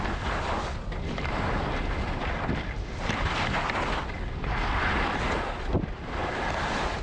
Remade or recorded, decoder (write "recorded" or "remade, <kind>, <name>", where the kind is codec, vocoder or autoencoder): recorded